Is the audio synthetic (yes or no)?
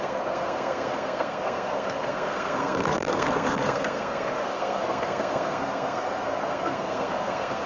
yes